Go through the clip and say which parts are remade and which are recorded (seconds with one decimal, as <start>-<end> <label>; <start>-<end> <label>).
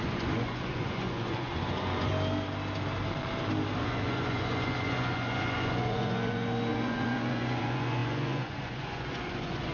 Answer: 0.0-2.1 remade; 2.1-3.8 recorded; 3.8-9.7 remade